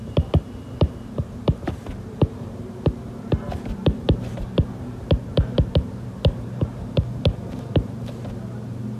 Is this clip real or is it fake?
fake